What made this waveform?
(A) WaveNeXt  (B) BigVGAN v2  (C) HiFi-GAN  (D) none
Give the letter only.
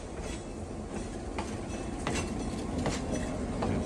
D